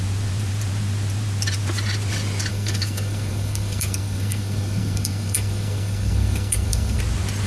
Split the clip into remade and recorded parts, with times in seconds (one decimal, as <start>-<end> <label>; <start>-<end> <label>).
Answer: 0.0-2.5 recorded; 2.5-7.0 remade; 7.0-7.5 recorded